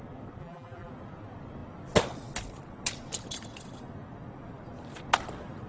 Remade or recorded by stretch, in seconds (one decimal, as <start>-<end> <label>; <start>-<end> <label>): 0.0-0.4 recorded; 0.4-0.9 remade; 0.9-5.7 recorded